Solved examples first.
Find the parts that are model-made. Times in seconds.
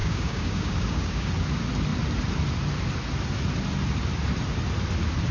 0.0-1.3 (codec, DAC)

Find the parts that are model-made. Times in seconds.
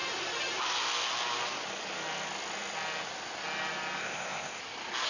4.0-4.6 (codec, ZipCodec)